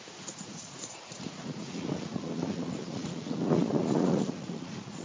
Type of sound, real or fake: fake